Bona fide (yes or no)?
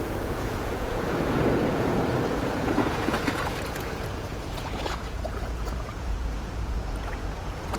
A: no